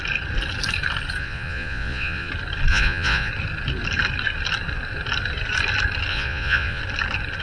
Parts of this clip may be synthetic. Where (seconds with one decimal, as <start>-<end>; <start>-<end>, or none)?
1.2-2.3; 2.7-3.3; 6.1-6.8